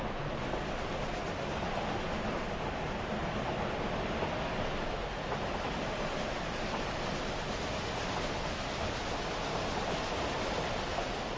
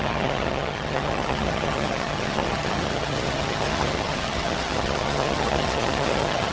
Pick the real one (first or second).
first